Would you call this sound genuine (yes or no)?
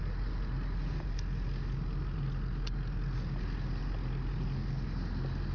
yes